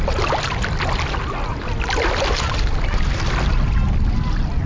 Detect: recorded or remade recorded